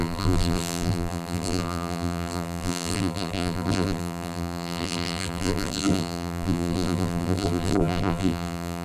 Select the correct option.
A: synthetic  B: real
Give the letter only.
A